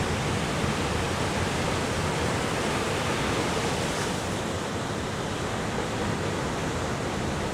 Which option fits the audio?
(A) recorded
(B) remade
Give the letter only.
B